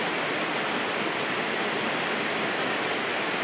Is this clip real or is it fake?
real